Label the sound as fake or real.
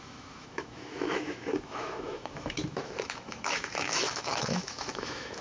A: fake